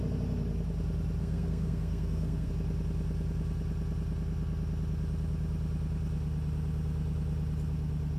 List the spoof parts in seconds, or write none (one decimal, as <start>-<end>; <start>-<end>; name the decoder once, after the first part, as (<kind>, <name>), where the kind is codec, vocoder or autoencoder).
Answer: 1.2-2.5 (codec, SNAC)